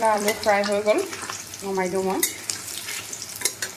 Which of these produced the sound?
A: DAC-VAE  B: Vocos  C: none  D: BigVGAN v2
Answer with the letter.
D